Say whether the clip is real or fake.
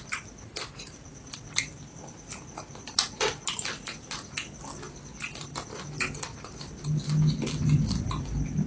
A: real